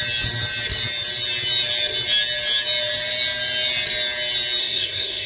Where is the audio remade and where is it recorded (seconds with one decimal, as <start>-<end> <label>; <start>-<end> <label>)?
0.0-4.6 recorded; 4.6-5.3 remade